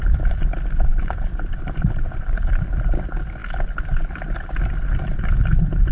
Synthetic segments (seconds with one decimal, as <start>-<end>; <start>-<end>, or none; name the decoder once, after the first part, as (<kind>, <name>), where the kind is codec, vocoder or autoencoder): 0.9-2.5 (vocoder, BigVGAN v2)